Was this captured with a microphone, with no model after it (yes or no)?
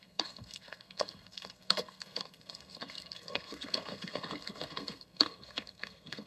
no